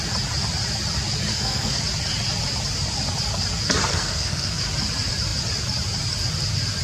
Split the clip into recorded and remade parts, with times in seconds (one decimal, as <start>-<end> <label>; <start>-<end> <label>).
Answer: 0.0-1.3 recorded; 1.3-1.8 remade; 1.8-3.9 recorded; 3.9-4.6 remade; 4.6-6.8 recorded